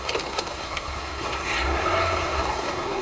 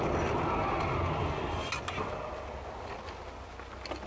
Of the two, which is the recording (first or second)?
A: second